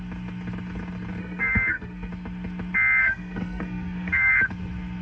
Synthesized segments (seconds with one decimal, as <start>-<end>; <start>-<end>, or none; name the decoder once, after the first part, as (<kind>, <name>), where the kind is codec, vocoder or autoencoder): 1.2-2.1 (codec, SNAC); 3.0-4.3